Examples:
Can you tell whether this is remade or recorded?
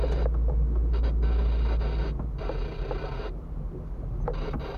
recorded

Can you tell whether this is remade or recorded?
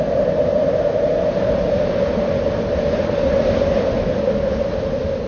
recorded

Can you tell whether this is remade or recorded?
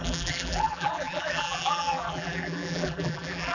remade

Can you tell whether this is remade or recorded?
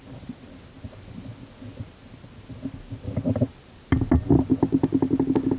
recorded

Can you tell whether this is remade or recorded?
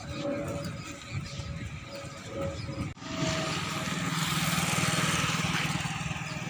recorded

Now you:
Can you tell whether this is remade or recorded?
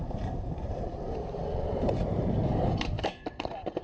remade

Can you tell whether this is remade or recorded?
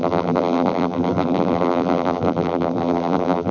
remade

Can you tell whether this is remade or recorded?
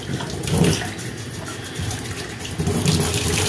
recorded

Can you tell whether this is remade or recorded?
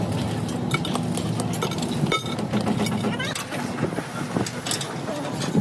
recorded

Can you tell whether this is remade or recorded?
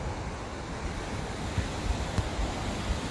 recorded